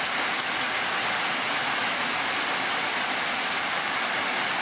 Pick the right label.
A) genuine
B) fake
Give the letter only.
A